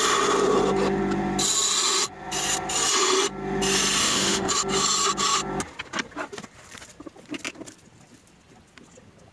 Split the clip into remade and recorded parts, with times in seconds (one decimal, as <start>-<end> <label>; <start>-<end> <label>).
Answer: 0.0-4.0 recorded; 4.0-4.5 remade; 4.5-9.3 recorded